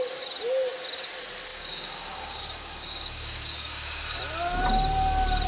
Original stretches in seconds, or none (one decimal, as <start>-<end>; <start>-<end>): 0.0-1.5; 4.2-5.5